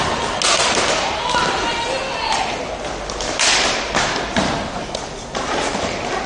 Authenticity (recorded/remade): recorded